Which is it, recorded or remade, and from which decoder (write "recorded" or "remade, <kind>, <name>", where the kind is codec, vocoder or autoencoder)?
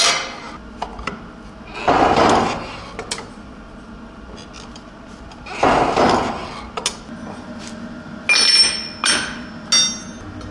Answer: recorded